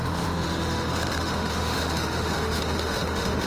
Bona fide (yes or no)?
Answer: no